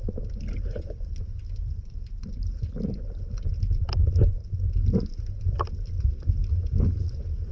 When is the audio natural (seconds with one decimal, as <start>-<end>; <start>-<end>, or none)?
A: 0.0-7.5